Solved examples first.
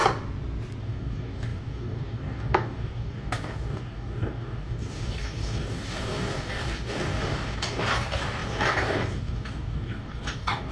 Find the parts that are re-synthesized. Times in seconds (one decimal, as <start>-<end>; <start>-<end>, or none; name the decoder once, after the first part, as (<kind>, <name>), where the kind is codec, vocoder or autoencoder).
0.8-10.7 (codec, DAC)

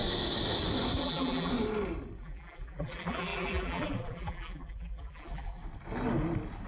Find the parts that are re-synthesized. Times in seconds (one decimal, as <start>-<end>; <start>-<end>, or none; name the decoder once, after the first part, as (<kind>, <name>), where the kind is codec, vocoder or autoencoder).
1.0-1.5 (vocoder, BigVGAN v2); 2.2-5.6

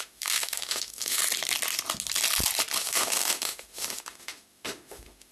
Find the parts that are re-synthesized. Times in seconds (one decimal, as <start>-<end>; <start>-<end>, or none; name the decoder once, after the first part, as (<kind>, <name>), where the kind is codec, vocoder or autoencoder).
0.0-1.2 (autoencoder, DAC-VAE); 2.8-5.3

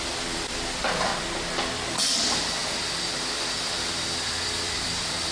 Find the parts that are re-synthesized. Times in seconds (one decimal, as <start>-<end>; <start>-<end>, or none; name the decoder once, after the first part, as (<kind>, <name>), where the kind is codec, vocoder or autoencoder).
0.0-1.1 (vocoder, BigVGAN v2); 1.9-5.3

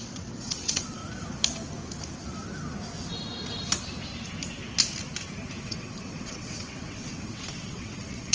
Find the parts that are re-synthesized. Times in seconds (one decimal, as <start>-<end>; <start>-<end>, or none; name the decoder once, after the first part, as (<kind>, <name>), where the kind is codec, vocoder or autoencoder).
0.0-1.0 (vocoder, WaveNeXt); 5.6-8.3